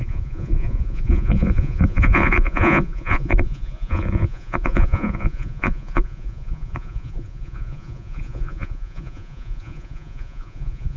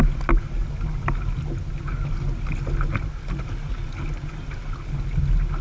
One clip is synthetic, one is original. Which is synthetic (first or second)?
first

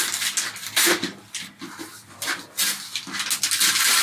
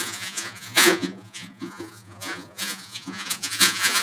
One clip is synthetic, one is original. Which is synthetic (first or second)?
second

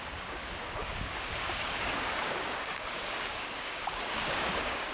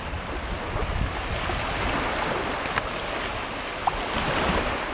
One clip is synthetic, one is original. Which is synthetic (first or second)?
first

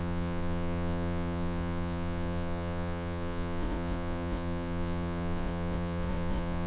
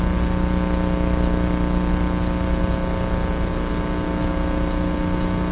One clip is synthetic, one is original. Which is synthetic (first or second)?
first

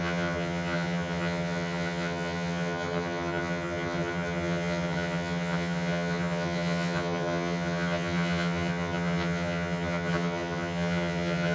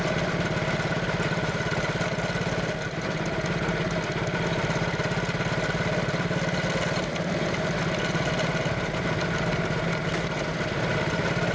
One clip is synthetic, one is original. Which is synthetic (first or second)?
first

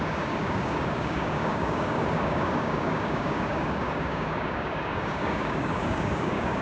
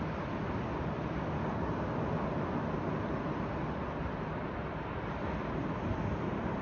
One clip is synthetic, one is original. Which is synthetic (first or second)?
first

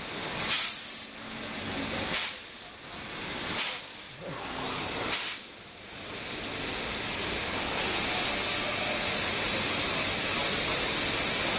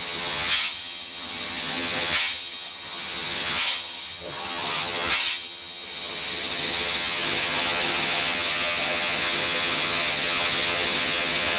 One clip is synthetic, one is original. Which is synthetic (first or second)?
second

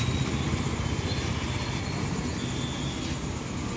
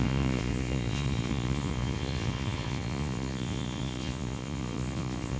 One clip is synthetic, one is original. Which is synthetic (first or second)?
second